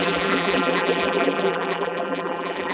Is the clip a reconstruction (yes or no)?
yes